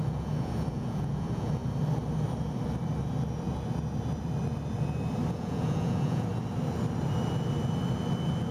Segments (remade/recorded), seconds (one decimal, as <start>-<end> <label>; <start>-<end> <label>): 0.0-1.6 remade; 1.6-5.3 recorded; 5.3-6.3 remade; 6.3-8.5 recorded

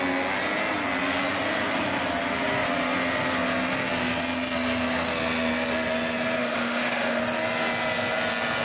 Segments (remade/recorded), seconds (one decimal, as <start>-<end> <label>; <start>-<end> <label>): 0.0-6.4 recorded; 6.4-7.2 remade; 7.2-8.6 recorded

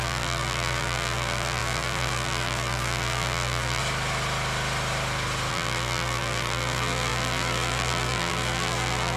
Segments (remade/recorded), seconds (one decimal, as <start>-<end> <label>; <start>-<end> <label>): 0.0-3.8 remade; 3.8-5.5 recorded; 5.5-9.2 remade

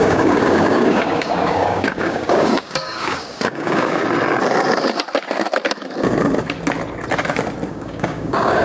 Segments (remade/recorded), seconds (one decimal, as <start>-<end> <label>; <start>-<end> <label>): 0.0-4.0 remade; 4.0-7.7 recorded; 7.7-8.6 remade

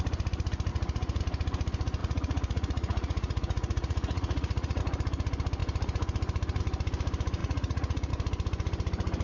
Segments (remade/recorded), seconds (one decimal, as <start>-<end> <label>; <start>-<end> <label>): 0.0-0.7 recorded; 0.7-1.2 remade; 1.2-2.0 recorded; 2.0-4.8 remade; 4.8-7.4 recorded; 7.4-8.1 remade; 8.1-9.2 recorded